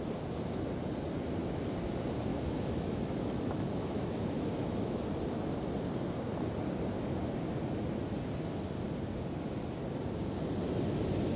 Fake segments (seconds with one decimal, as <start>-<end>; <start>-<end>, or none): 2.3-5.1